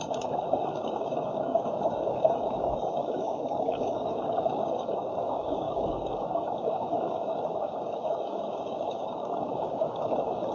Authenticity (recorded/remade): remade